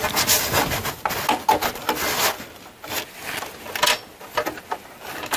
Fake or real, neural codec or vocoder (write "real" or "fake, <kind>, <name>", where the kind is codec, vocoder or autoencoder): real